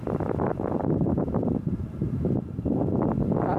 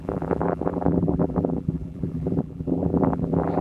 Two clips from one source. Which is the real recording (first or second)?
first